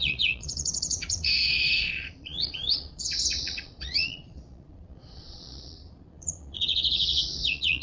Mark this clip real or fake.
fake